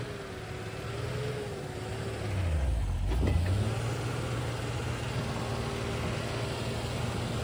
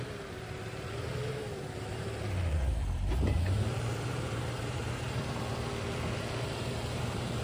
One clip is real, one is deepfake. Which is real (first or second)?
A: first